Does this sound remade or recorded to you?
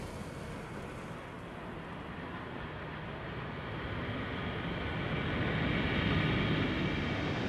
recorded